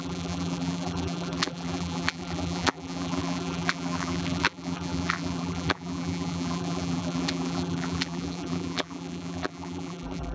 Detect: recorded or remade remade